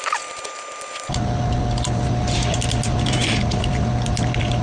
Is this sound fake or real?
real